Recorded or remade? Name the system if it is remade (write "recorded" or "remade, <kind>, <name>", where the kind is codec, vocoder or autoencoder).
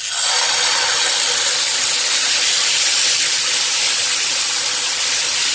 recorded